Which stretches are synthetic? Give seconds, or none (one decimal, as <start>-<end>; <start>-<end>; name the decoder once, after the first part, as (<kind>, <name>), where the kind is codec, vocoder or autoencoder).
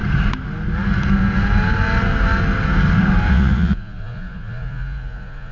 3.3-5.5 (vocoder, Vocos)